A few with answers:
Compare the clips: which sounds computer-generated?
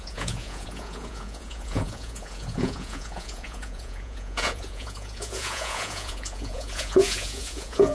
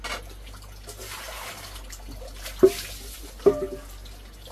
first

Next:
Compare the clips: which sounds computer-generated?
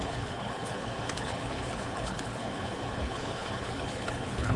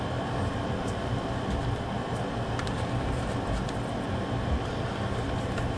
first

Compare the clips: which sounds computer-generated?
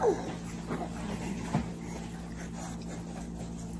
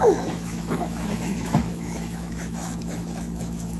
second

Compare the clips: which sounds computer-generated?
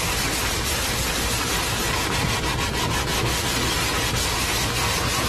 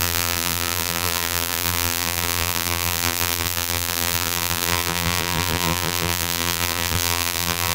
second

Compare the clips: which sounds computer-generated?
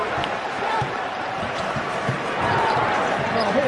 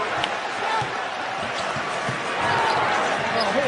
first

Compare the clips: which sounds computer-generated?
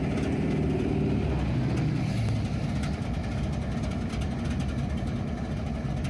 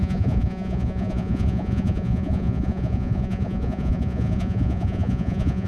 second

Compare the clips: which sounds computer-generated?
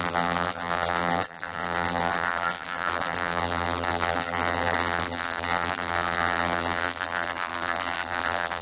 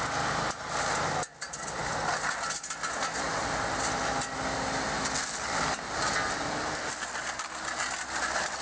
first